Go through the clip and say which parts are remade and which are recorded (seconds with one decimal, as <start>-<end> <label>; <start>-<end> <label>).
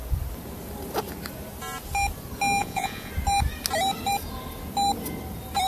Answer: 0.0-2.6 recorded; 2.6-3.1 remade; 3.1-5.7 recorded